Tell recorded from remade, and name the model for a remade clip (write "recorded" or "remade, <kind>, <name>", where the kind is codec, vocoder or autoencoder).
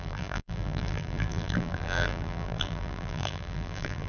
remade, vocoder, BigVGAN v2